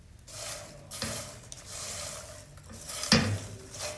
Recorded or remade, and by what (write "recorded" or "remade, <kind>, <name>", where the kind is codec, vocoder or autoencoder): recorded